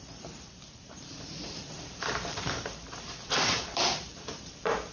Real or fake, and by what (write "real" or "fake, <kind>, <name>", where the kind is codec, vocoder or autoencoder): fake, vocoder, BigVGAN v2